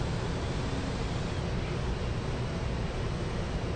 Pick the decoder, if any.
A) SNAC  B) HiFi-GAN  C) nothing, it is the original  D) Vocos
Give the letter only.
C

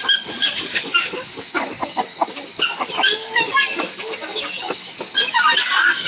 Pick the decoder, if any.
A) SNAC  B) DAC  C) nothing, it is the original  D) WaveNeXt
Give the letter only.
B